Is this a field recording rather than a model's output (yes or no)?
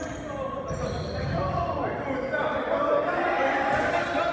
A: yes